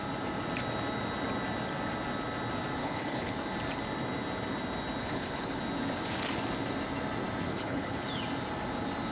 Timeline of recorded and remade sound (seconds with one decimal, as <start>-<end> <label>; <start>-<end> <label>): 0.0-2.8 recorded; 2.8-3.3 remade; 3.3-5.0 recorded; 5.0-5.6 remade; 5.6-7.5 recorded; 7.5-8.0 remade; 8.0-9.1 recorded